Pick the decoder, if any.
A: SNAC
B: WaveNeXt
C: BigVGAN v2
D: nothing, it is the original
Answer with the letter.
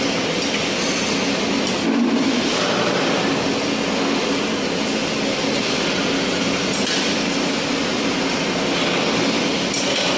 D